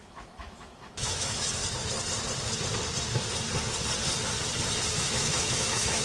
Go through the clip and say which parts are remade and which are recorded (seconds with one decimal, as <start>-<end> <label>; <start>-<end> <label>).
0.0-1.6 remade; 1.6-5.0 recorded; 5.0-6.0 remade